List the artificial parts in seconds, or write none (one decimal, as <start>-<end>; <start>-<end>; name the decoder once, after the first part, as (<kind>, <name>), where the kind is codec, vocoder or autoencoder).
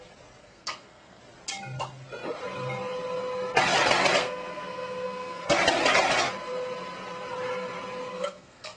0.4-1.2 (codec, SNAC); 4.2-5.4; 8.1-8.8